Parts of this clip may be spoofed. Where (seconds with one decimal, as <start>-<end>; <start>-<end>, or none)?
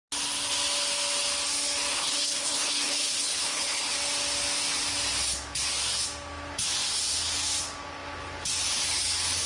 1.9-3.9